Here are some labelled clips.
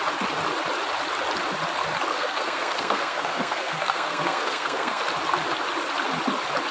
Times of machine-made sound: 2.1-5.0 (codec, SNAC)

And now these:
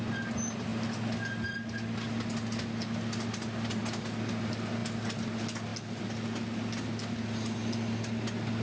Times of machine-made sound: none

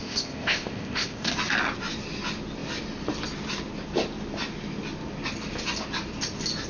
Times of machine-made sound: 0.0-1.3 (codec, ZipCodec)

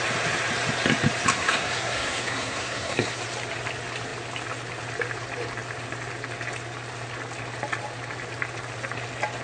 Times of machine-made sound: 1.3-3.2 (codec, SNAC)